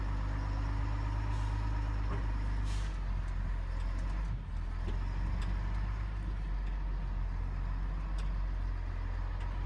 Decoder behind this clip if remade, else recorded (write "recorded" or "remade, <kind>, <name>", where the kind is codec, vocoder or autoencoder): recorded